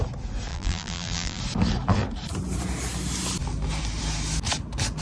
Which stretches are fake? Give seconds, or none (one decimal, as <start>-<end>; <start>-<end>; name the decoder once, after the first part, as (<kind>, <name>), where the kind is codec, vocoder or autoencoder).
0.5-1.4 (vocoder, BigVGAN v2)